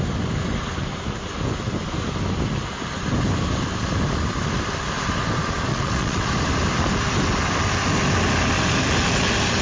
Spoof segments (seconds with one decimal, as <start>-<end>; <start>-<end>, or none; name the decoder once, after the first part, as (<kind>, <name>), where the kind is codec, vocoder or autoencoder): 5.7-6.3 (vocoder, WaveNeXt)